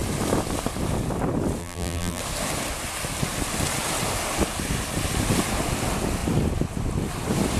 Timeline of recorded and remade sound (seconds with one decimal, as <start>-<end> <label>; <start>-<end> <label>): 0.0-1.6 recorded; 1.6-2.2 remade; 2.2-7.6 recorded